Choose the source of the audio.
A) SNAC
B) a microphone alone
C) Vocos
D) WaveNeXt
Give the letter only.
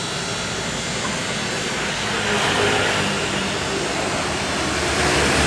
B